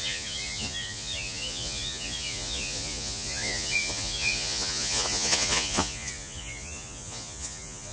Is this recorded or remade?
remade